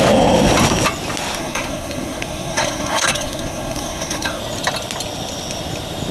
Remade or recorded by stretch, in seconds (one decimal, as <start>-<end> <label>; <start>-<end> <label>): 0.0-1.4 recorded; 1.4-4.4 remade; 4.4-6.1 recorded